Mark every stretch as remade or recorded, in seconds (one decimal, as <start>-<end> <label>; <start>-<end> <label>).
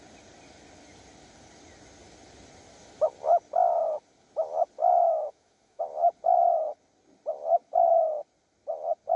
0.0-4.8 recorded; 4.8-5.8 remade; 5.8-9.2 recorded